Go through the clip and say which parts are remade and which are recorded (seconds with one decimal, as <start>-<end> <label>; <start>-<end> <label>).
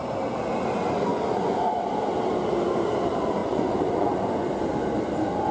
0.0-1.1 recorded; 1.1-1.9 remade; 1.9-3.4 recorded; 3.4-4.5 remade; 4.5-5.5 recorded